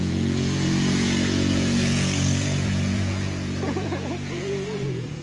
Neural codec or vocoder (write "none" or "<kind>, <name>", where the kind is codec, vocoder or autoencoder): vocoder, Vocos